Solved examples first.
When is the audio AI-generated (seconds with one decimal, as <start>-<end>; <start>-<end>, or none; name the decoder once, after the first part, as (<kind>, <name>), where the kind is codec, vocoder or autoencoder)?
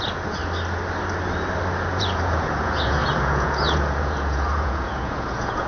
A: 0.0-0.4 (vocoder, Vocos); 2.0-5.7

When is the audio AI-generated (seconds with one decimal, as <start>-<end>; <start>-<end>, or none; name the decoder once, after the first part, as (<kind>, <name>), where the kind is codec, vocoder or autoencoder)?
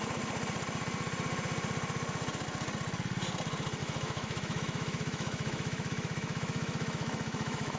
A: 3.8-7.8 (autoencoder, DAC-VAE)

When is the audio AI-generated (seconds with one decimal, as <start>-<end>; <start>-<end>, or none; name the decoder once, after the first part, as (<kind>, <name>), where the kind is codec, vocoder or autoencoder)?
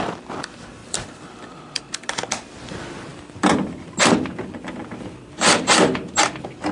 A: 0.8-1.8 (vocoder, BigVGAN v2); 3.1-6.1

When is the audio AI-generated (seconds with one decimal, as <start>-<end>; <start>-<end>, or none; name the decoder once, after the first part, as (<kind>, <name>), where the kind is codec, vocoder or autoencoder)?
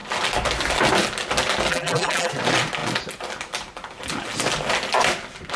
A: 1.7-2.3 (vocoder, BigVGAN v2)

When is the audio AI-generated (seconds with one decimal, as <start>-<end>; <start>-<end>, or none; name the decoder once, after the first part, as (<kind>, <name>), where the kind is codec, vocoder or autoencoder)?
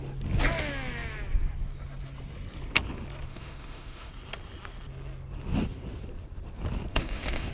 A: 3.3-4.1 (autoencoder, DAC-VAE); 6.9-7.5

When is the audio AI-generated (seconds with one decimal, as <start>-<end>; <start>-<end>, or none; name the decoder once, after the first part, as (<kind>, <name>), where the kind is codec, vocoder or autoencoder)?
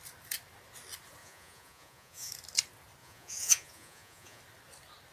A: 1.2-2.3 (vocoder, Vocos); 3.0-4.4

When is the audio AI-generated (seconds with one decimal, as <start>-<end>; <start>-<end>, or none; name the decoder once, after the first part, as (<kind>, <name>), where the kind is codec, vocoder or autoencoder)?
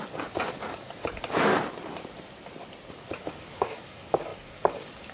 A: 0.0-1.5 (codec, DAC); 2.9-5.1